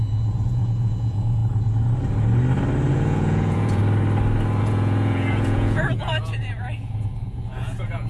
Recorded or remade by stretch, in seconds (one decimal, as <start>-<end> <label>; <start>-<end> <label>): 0.0-1.4 remade; 1.4-2.9 recorded; 2.9-3.8 remade; 3.8-4.6 recorded; 4.6-8.1 remade